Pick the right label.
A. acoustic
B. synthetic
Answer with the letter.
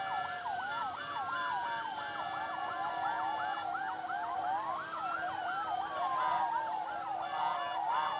A